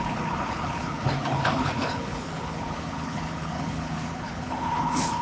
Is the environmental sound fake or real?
fake